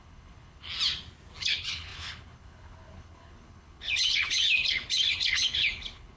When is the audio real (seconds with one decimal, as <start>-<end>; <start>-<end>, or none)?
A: 0.7-1.4